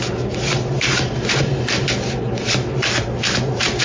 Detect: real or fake real